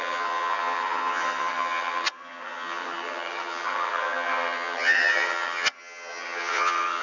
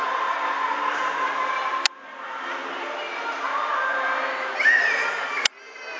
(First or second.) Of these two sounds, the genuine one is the second